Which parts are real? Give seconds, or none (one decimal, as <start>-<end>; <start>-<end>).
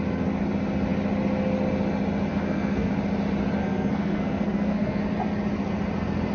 0.0-2.3; 2.9-3.6; 5.0-6.3